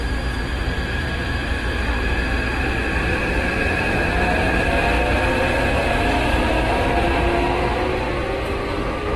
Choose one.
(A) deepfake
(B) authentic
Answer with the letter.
B